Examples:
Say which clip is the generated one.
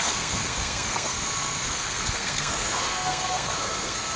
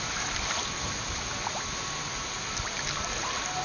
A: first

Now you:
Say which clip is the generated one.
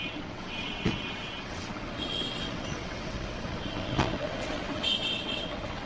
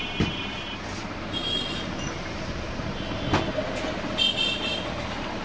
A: first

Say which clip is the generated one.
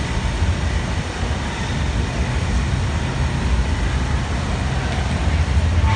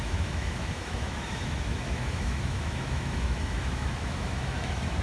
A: second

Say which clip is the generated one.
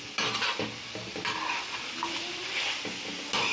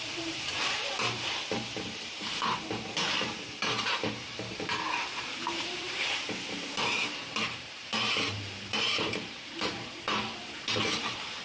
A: second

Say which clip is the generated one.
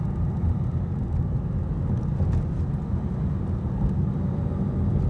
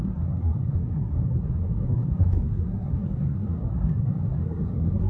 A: second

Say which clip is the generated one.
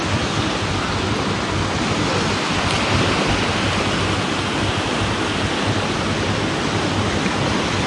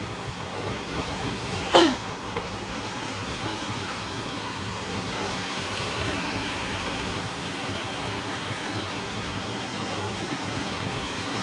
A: second